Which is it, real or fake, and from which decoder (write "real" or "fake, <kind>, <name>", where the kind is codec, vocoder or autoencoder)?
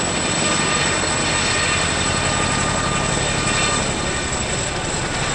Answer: real